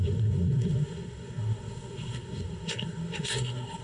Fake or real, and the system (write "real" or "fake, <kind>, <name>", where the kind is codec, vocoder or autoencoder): fake, codec, SNAC